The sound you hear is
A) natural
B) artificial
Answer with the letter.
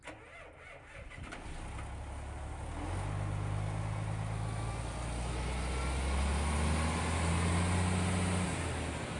A